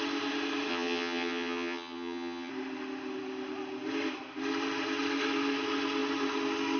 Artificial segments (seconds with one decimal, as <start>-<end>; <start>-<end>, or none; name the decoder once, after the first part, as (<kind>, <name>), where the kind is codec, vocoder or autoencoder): 0.7-2.5 (vocoder, HiFi-GAN)